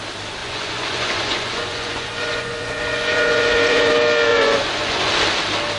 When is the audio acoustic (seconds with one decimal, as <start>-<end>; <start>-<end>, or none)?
0.0-0.4; 3.9-4.3; 5.1-5.8